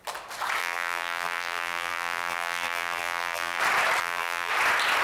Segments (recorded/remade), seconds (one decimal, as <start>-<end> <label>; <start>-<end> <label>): 0.0-0.6 recorded; 0.6-3.6 remade; 3.6-4.0 recorded; 4.0-4.5 remade; 4.5-5.0 recorded